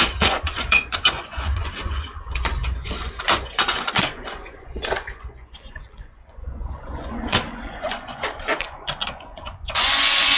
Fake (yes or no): yes